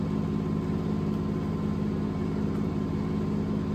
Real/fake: real